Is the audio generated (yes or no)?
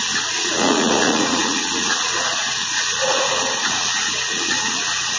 yes